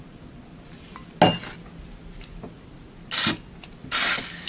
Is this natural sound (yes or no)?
yes